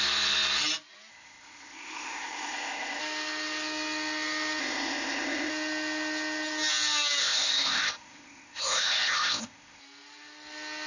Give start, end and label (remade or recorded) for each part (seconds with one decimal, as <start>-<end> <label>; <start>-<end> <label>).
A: 0.0-1.1 recorded; 1.1-3.0 remade; 3.0-4.6 recorded; 4.6-5.5 remade; 5.5-7.2 recorded; 7.2-9.8 remade; 9.8-10.9 recorded